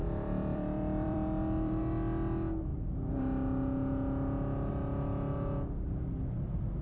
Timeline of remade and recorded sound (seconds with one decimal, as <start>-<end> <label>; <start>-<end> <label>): 0.0-1.8 remade; 1.8-6.8 recorded